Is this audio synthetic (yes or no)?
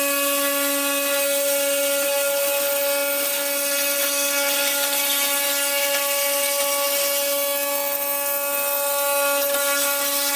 no